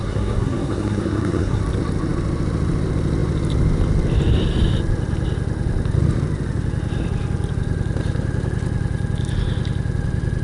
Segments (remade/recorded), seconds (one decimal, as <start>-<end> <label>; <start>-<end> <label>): 0.0-1.6 remade; 1.6-10.4 recorded